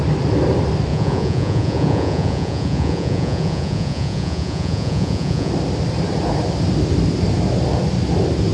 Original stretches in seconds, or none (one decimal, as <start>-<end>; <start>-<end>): 0.0-0.9; 5.5-8.5